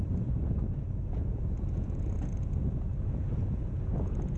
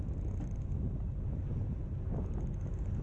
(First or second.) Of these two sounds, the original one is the second